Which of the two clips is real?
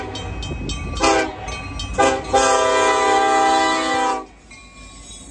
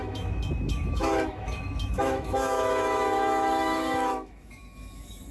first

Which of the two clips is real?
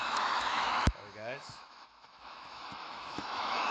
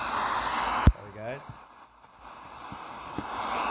second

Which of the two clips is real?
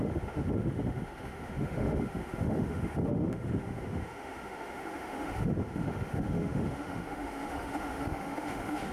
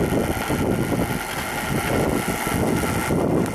second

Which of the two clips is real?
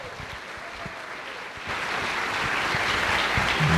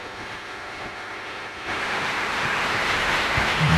first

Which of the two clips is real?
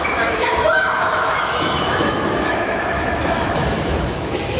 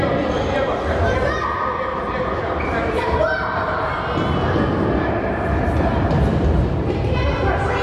second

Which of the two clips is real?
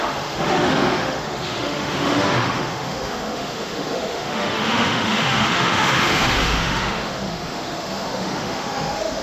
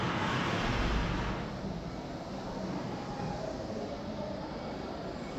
second